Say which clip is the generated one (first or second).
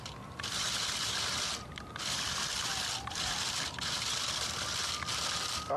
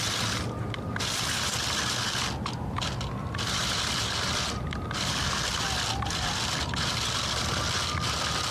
first